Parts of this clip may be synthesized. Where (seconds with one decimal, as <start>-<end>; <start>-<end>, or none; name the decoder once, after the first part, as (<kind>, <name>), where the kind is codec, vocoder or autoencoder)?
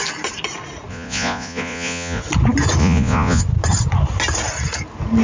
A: 0.9-2.2 (vocoder, Vocos); 2.8-3.4